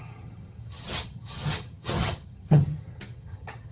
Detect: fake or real fake